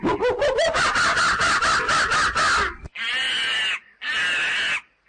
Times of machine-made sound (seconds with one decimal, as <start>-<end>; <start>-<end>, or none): none